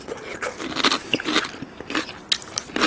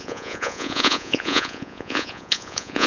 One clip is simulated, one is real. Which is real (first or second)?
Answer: first